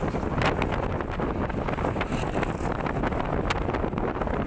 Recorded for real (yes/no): yes